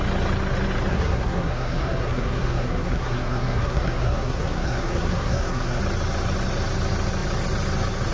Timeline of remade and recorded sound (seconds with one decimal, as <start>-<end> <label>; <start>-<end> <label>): 0.0-0.9 recorded; 0.9-5.8 remade; 5.8-8.1 recorded